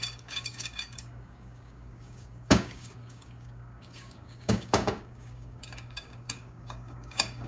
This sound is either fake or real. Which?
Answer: fake